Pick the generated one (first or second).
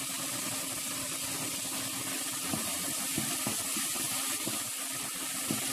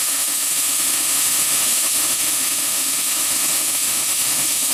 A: second